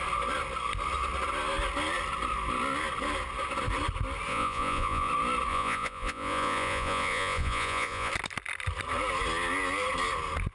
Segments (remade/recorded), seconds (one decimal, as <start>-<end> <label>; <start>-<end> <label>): 0.0-4.3 recorded; 4.3-5.1 remade; 5.1-5.5 recorded; 5.5-8.1 remade; 8.1-10.5 recorded

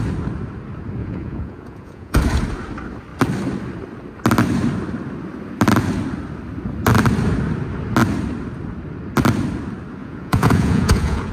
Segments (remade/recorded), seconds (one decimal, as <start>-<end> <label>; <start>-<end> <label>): 0.0-1.0 recorded; 1.0-2.2 remade; 2.2-10.0 recorded; 10.0-11.3 remade